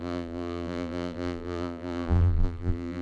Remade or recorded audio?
remade